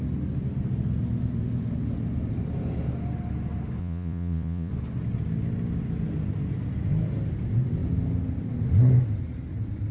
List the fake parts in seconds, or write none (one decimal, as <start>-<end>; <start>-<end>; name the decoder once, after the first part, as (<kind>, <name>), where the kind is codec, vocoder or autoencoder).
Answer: 3.8-4.7 (vocoder, Vocos)

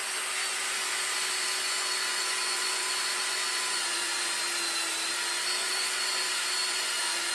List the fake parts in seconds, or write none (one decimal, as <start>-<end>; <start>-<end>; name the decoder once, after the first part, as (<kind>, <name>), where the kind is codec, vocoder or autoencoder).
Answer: 0.5-4.3 (vocoder, Vocos); 5.6-7.3

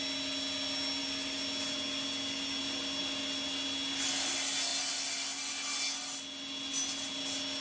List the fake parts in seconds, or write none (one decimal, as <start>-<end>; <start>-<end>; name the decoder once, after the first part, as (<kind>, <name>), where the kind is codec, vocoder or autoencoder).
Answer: none

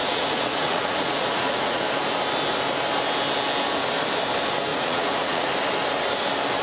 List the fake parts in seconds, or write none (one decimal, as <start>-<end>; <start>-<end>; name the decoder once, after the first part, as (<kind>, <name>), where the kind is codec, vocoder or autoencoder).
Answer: 0.0-1.8 (vocoder, Vocos); 4.7-5.5

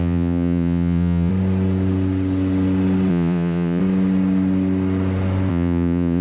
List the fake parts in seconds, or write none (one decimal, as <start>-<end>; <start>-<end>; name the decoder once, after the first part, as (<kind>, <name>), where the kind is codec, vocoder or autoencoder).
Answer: 0.0-1.3 (vocoder, Vocos); 3.1-3.8; 5.5-6.2

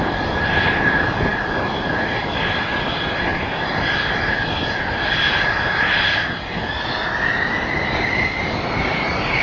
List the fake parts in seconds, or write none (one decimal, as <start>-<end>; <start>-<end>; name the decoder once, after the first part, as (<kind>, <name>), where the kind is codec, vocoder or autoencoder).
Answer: none